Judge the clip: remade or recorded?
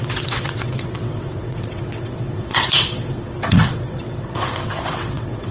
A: remade